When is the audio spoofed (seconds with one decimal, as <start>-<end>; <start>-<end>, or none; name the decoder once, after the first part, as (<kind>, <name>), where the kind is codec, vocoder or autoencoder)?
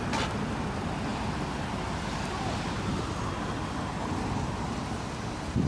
none